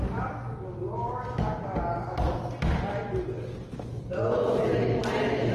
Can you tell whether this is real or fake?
real